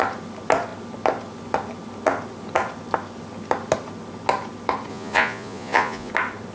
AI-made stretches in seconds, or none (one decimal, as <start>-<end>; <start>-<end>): 4.9-6.1

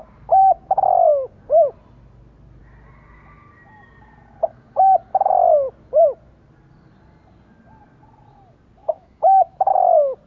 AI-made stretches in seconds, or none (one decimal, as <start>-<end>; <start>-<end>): 0.4-1.3; 8.8-9.7

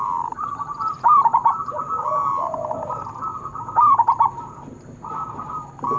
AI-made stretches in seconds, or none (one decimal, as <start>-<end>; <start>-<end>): none

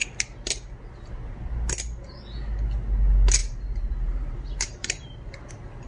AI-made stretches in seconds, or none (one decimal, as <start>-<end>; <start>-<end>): 3.4-5.5

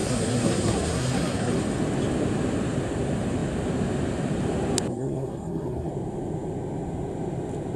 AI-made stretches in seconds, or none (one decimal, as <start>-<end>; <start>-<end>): 0.0-1.5; 4.9-5.9

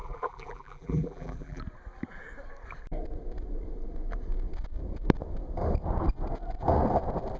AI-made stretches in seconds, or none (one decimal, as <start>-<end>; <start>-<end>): 0.0-1.6

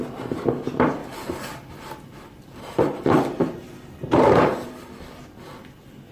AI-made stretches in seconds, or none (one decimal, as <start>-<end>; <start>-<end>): 1.0-4.7